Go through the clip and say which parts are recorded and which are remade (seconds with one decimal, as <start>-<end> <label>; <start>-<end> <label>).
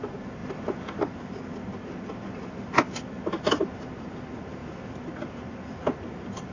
0.0-4.6 recorded; 4.6-5.1 remade; 5.1-6.5 recorded